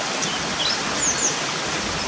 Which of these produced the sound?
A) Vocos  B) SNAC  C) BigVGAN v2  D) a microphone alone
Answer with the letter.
D